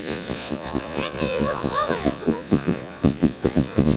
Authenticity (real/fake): fake